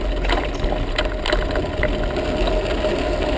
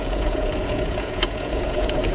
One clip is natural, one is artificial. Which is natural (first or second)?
first